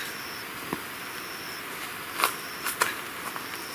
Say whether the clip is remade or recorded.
recorded